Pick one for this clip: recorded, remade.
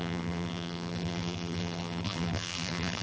remade